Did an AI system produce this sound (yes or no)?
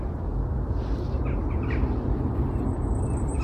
no